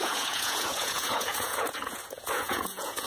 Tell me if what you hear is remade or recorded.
remade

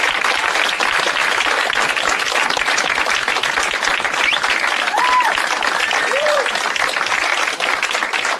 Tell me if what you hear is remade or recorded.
remade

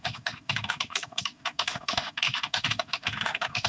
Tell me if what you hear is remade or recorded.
remade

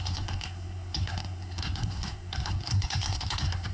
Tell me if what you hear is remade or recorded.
remade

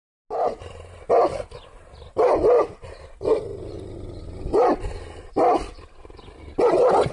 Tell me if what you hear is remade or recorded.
recorded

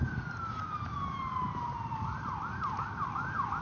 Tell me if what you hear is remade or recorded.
recorded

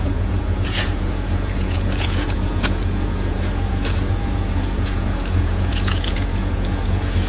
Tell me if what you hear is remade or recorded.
remade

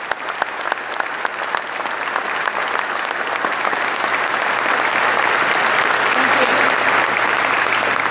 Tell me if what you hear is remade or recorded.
recorded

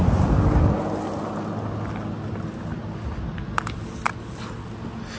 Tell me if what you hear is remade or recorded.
recorded